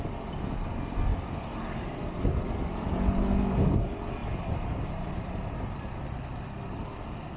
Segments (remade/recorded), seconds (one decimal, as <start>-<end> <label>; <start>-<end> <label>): 0.0-7.4 recorded